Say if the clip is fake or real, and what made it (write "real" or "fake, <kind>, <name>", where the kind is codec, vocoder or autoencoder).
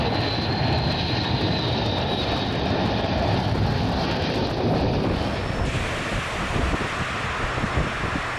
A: real